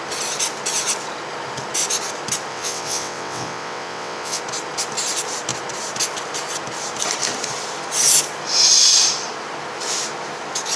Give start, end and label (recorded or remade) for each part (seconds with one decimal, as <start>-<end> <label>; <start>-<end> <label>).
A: 0.0-2.5 recorded; 2.5-4.4 remade; 4.4-10.8 recorded

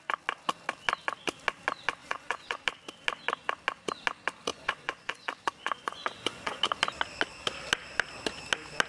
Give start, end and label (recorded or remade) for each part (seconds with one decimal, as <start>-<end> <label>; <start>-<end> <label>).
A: 0.0-2.0 recorded; 2.0-2.6 remade; 2.6-4.5 recorded; 4.5-6.6 remade; 6.6-8.9 recorded